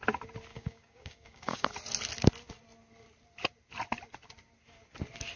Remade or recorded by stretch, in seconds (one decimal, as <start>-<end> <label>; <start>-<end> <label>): 0.0-0.5 recorded; 0.5-1.7 remade; 1.7-5.4 recorded